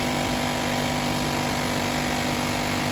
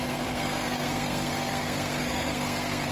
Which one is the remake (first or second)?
second